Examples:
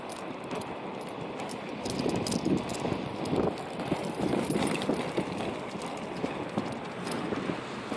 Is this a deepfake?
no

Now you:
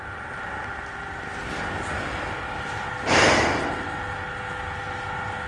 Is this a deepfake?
no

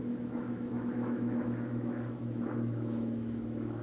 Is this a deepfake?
yes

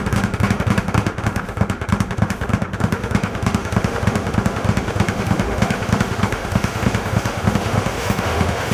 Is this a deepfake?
yes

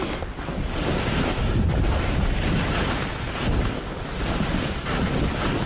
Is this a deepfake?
no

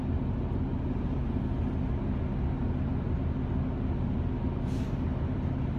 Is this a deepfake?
no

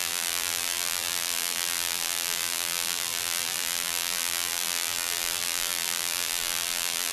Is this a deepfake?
yes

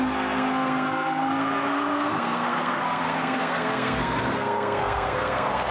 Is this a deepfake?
yes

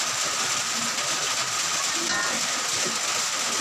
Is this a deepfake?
no